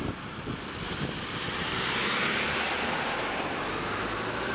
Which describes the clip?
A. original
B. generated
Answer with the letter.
A